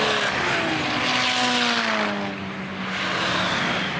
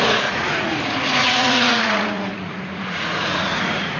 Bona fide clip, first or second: first